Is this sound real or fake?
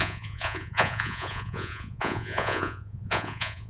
fake